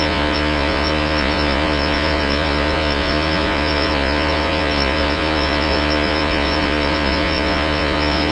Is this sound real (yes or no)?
no